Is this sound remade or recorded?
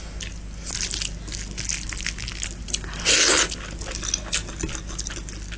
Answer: recorded